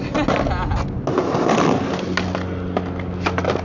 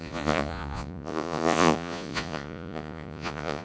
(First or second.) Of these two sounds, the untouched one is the first